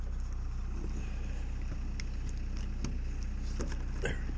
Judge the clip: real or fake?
real